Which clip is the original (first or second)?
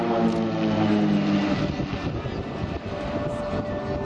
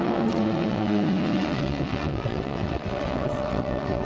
first